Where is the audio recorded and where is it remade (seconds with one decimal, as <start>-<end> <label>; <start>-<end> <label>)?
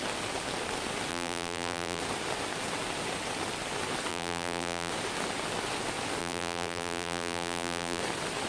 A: 0.0-1.1 recorded; 1.1-2.0 remade; 2.0-4.1 recorded; 4.1-4.9 remade; 4.9-6.2 recorded; 6.2-8.0 remade; 8.0-8.5 recorded